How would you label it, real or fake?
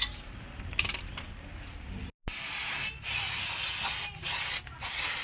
real